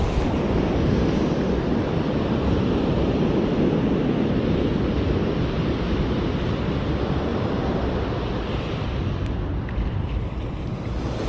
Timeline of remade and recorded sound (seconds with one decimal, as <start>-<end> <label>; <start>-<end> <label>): 0.0-11.3 recorded